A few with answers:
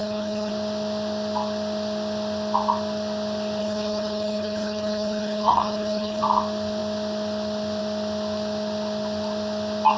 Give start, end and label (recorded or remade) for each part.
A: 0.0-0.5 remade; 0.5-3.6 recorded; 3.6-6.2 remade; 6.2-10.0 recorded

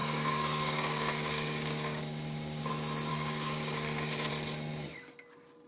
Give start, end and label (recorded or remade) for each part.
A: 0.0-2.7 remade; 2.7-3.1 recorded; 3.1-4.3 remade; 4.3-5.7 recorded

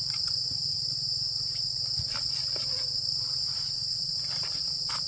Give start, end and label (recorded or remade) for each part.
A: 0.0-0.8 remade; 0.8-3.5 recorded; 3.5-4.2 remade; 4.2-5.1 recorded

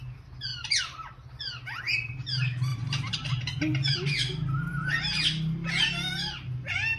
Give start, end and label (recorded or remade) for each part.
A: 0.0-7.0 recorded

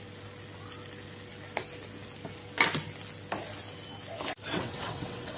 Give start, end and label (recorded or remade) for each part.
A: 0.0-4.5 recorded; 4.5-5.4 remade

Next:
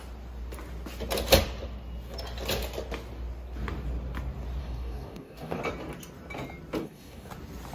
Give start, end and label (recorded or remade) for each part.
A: 0.0-4.6 recorded; 4.6-5.6 remade; 5.6-6.8 recorded; 6.8-7.3 remade; 7.3-7.7 recorded

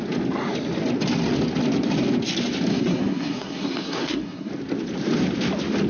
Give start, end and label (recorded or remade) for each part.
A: 0.0-2.7 recorded; 2.7-4.5 remade; 4.5-5.9 recorded